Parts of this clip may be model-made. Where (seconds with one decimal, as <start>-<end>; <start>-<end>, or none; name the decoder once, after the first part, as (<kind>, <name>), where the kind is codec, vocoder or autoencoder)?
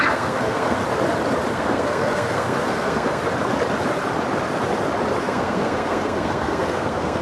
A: 0.0-0.8 (codec, SNAC); 1.5-3.2; 5.2-7.2